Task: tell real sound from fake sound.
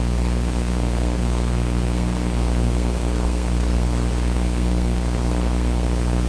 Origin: fake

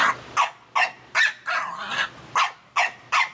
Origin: real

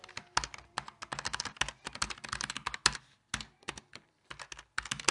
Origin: real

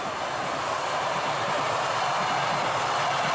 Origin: real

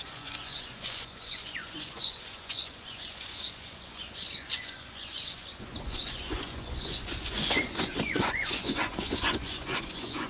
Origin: fake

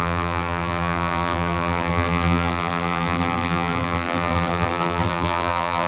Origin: fake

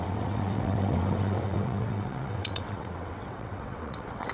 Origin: fake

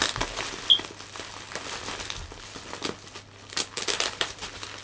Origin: real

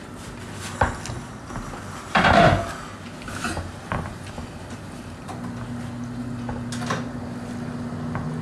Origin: real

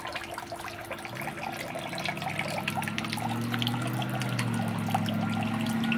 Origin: real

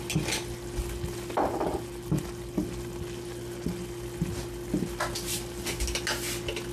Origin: real